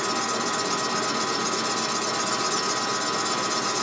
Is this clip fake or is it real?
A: real